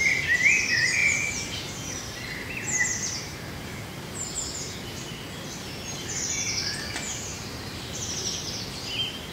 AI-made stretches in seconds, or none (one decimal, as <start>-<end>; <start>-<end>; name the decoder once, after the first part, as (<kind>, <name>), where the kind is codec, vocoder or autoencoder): 7.3-8.5 (vocoder, BigVGAN v2)